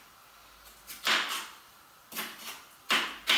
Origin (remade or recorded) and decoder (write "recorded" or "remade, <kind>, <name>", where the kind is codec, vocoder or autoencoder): recorded